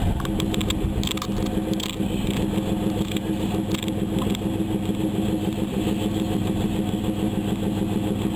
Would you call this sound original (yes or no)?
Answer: yes